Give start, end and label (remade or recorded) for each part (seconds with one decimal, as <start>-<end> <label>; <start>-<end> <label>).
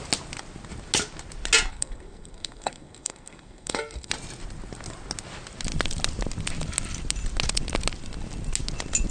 0.0-1.7 recorded; 1.7-4.1 remade; 4.1-9.1 recorded